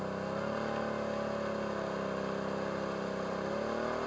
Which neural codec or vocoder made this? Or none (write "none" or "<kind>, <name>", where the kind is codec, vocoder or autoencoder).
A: none